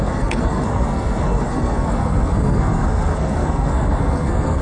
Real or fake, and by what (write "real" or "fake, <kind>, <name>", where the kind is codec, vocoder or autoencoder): fake, codec, SNAC